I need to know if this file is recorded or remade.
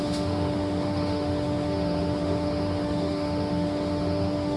remade